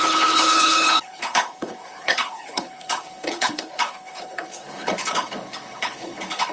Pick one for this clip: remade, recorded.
remade